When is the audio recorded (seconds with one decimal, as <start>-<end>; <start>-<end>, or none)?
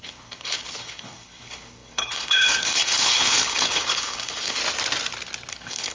4.6-5.5